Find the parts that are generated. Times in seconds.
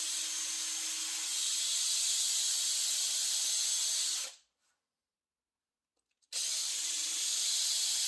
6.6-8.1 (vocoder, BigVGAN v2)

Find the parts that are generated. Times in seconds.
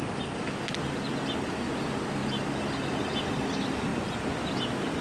none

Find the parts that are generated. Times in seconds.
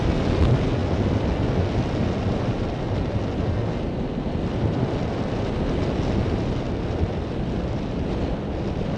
none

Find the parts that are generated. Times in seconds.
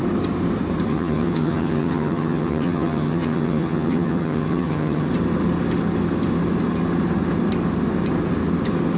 0.9-5.1 (vocoder, HiFi-GAN)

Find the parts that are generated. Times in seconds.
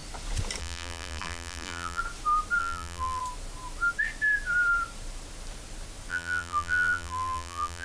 0.6-2.0 (vocoder, BigVGAN v2); 2.6-3.2; 6.1-7.8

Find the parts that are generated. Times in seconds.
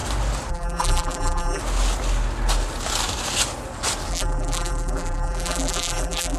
0.5-1.6 (vocoder, BigVGAN v2); 4.1-6.4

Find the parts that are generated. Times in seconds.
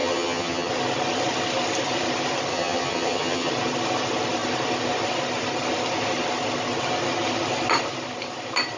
0.0-0.7 (vocoder, HiFi-GAN); 2.5-3.5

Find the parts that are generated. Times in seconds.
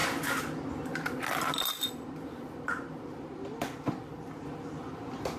none